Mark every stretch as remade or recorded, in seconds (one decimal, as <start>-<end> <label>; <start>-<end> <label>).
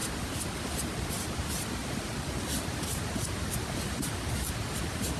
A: 0.0-5.2 recorded